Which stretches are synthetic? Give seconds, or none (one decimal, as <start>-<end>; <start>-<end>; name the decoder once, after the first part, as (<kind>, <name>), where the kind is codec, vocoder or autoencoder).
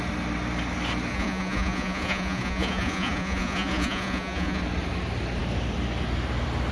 1.1-4.6 (vocoder, Vocos)